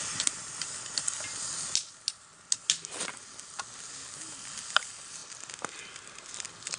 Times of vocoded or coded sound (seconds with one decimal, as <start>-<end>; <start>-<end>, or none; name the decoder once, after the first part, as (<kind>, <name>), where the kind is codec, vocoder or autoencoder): none